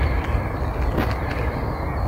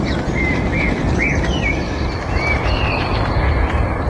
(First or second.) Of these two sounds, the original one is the first